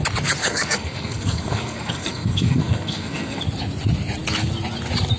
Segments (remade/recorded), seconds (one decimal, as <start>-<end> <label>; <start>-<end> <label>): 0.0-0.4 recorded; 0.4-3.4 remade; 3.4-5.2 recorded